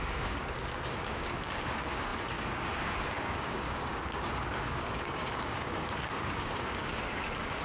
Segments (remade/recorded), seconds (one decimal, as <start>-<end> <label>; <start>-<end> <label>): 0.0-7.6 remade